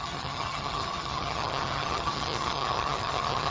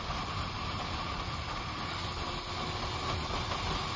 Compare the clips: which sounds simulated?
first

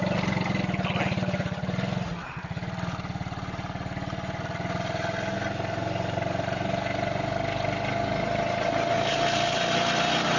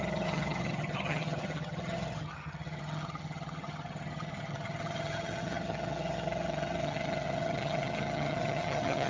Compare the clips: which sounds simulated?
second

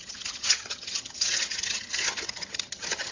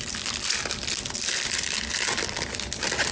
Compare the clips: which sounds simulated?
first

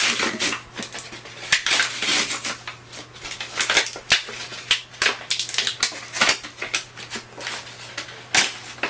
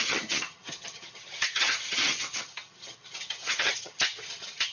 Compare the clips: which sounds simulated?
second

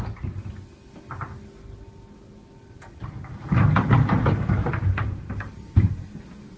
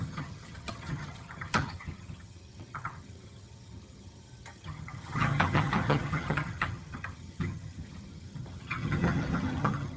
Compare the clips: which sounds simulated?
second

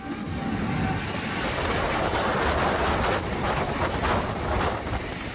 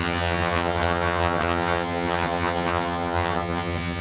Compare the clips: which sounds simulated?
second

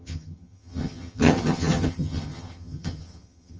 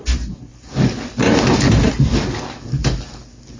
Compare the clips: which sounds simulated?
first